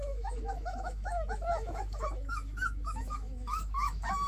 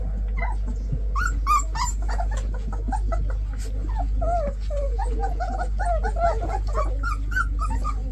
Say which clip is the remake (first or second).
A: first